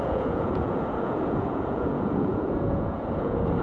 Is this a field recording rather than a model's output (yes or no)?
no